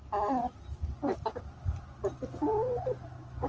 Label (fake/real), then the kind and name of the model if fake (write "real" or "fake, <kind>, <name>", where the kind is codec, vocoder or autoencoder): real